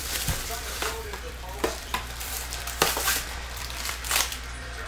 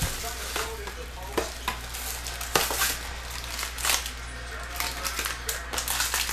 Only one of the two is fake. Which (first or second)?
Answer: first